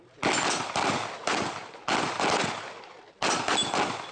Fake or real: real